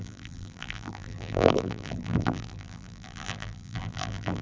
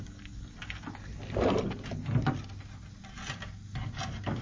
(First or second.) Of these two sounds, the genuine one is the second